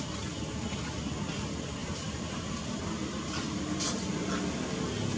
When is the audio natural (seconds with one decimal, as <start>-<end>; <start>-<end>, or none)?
0.0-1.8; 4.3-5.2